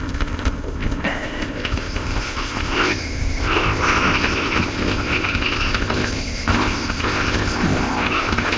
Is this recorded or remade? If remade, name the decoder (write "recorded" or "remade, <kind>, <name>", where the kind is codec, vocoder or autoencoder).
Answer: remade, codec, ZipCodec